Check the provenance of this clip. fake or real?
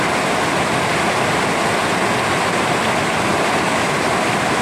real